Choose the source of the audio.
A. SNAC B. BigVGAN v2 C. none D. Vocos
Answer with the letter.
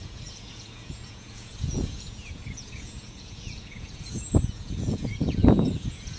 D